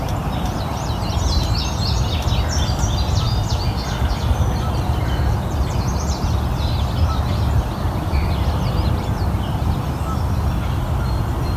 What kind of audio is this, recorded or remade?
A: recorded